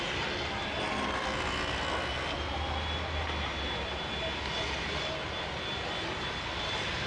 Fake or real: real